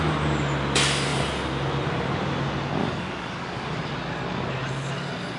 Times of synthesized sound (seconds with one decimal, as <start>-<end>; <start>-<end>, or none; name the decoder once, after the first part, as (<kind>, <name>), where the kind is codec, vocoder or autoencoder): 2.8-3.8 (codec, DAC)